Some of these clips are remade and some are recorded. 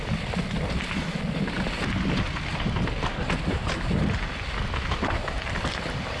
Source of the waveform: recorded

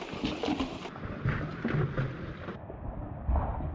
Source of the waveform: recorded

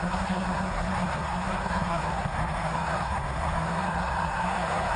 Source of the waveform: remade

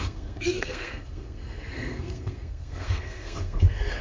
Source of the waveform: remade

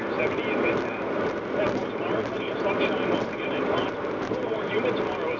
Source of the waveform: recorded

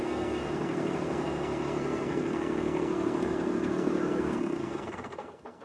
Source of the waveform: remade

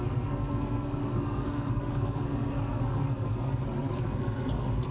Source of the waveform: remade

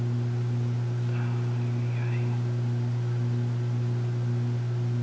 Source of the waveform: recorded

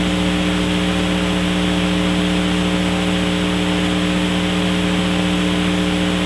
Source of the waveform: recorded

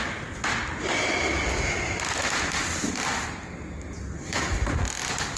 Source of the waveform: recorded